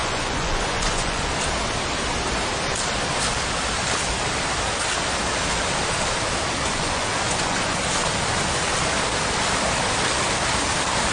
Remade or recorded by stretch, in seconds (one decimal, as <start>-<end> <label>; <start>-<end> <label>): 0.0-1.3 remade; 1.3-6.7 recorded; 6.7-7.8 remade; 7.8-11.1 recorded